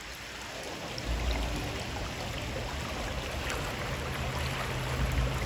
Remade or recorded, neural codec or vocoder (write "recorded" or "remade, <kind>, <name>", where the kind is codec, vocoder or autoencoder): recorded